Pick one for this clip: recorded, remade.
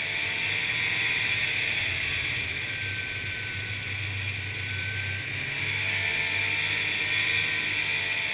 recorded